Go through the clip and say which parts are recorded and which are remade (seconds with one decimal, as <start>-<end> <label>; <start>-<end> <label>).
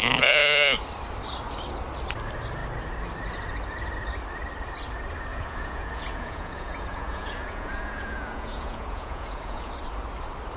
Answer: 0.0-5.3 recorded; 5.3-9.7 remade; 9.7-10.6 recorded